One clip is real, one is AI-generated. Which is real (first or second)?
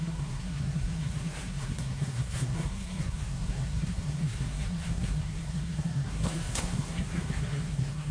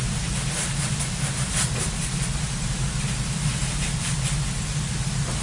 second